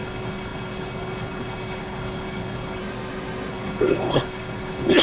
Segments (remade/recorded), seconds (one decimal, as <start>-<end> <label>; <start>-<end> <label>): 0.0-2.8 remade; 2.8-3.5 recorded; 3.5-5.0 remade